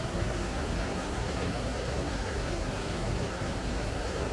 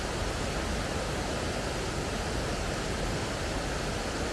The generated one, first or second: first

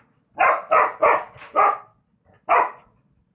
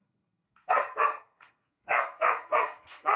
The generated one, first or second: second